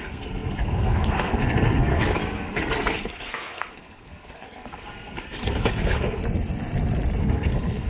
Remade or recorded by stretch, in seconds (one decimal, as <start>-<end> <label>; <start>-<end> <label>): 0.0-6.2 remade; 6.2-7.2 recorded; 7.2-7.9 remade